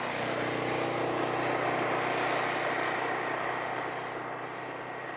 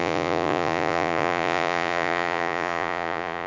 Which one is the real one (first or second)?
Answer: first